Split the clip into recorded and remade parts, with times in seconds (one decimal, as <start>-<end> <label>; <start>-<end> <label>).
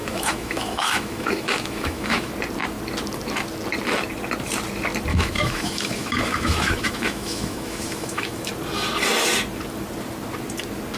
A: 0.0-2.3 remade; 2.3-5.1 recorded; 5.1-8.5 remade; 8.5-11.0 recorded